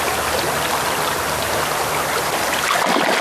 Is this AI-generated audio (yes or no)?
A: no